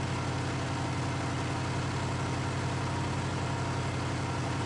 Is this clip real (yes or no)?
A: yes